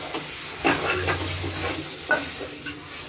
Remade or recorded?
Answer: recorded